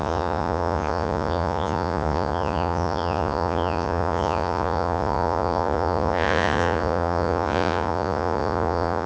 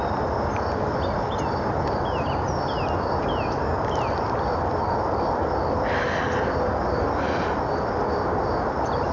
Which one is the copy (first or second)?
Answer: first